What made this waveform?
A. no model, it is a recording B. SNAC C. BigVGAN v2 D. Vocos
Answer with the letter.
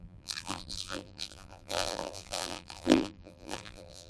C